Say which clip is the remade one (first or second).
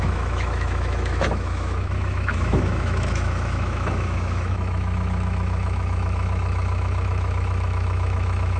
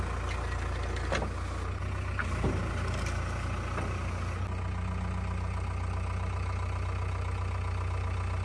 first